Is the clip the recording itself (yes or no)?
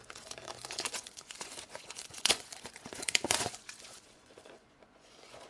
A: no